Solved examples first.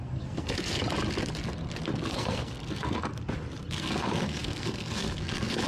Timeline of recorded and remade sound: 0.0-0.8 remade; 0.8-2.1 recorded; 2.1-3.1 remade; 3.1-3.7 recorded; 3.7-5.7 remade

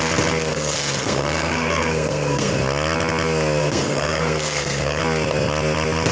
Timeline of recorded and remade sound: 0.0-0.5 recorded; 0.5-2.5 remade; 2.5-3.6 recorded; 3.6-5.0 remade; 5.0-6.1 recorded